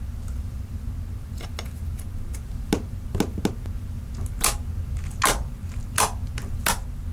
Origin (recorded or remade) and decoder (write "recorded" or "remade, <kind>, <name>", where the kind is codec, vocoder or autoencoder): recorded